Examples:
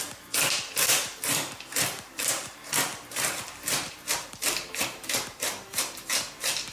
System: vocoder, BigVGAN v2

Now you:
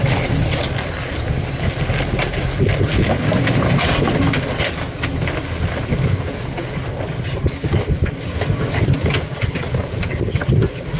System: none